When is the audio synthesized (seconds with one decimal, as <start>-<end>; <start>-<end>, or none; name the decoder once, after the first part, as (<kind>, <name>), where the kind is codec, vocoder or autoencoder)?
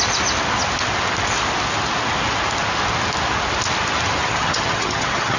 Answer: 4.2-5.4 (vocoder, HiFi-GAN)